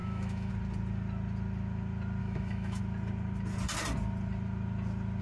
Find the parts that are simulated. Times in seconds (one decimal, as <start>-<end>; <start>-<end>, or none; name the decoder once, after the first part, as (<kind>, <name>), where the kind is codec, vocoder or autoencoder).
0.0-0.5 (autoencoder, DAC-VAE); 2.2-2.8